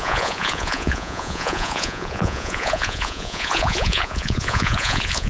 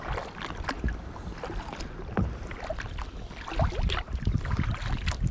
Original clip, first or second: second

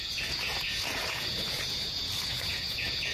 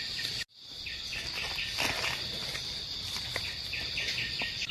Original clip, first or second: second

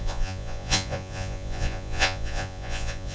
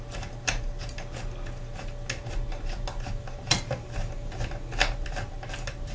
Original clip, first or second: second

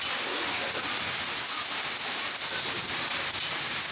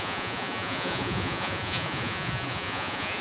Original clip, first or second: first